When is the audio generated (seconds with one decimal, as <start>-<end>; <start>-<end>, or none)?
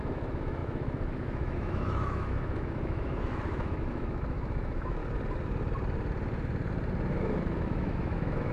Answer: 0.0-5.0; 7.1-8.5